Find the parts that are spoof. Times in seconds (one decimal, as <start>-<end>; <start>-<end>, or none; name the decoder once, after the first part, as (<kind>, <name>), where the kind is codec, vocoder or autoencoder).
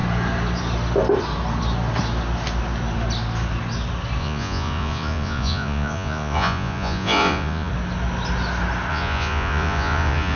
4.2-7.7 (vocoder, Vocos); 8.9-10.4